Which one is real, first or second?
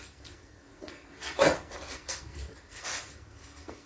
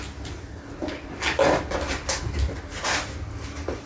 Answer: second